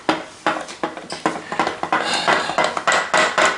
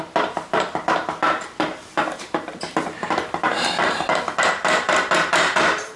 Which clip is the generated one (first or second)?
second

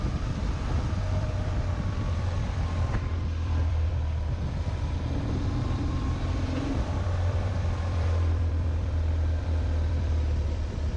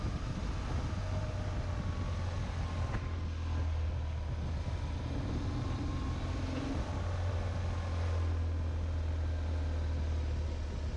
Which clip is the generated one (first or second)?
first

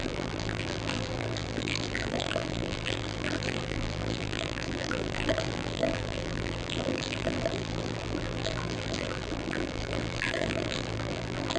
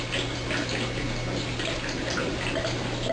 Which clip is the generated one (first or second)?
first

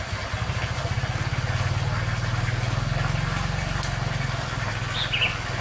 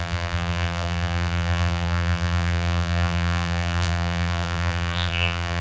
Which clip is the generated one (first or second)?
second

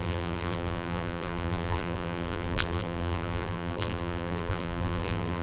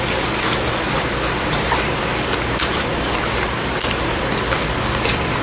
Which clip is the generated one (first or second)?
first